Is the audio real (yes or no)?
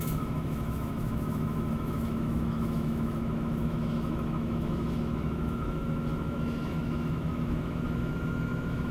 no